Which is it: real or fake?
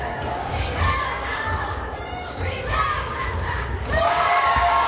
fake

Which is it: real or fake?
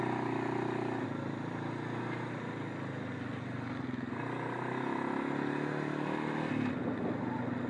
real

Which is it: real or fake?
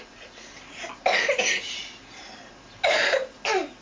real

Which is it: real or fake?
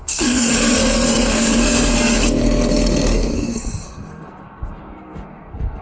fake